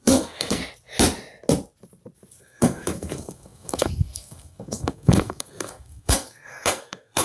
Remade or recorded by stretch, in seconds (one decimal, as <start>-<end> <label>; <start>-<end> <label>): 0.0-0.6 remade; 0.6-2.4 recorded; 2.4-7.2 remade